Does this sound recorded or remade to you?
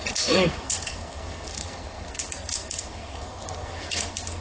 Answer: remade